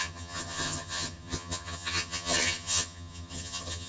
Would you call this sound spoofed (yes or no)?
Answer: yes